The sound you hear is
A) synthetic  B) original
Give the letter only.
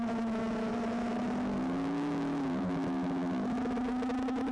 A